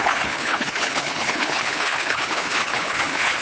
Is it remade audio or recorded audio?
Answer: remade